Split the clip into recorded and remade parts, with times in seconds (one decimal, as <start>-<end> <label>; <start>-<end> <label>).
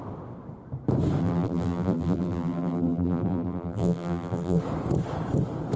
0.0-1.2 recorded; 1.2-4.6 remade; 4.6-5.8 recorded